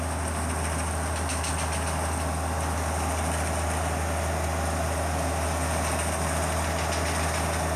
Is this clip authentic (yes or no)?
yes